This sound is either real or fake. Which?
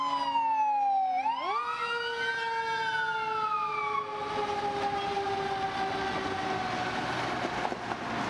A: real